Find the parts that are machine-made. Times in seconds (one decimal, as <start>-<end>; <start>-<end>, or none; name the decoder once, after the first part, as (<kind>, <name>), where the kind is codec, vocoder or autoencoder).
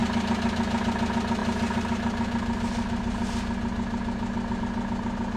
none